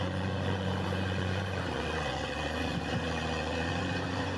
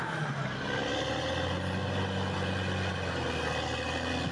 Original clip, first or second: second